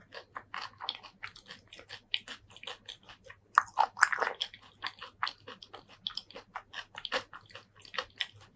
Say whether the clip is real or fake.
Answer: real